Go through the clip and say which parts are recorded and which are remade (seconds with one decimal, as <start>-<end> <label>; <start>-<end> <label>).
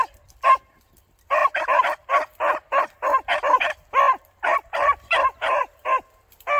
0.0-4.5 recorded; 4.5-5.5 remade; 5.5-6.6 recorded